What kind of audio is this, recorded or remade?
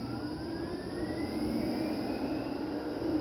recorded